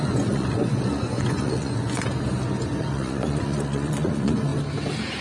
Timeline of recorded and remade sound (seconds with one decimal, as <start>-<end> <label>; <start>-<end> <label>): 0.0-2.1 remade; 2.1-2.8 recorded; 2.8-4.5 remade; 4.5-5.2 recorded